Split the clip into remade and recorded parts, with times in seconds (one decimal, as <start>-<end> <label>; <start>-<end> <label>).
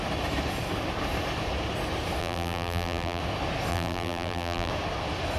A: 0.0-2.2 recorded; 2.2-3.2 remade; 3.2-3.7 recorded; 3.7-4.7 remade; 4.7-5.4 recorded